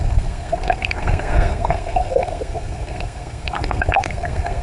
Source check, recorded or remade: remade